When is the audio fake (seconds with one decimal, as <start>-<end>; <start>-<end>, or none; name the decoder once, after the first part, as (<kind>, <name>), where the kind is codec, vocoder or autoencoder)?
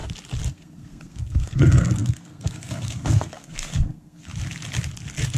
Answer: 0.5-4.3 (codec, SNAC)